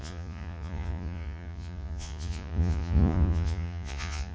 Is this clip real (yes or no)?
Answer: no